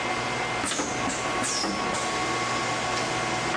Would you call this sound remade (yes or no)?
no